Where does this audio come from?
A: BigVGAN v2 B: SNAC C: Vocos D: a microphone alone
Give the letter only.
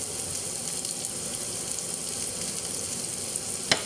D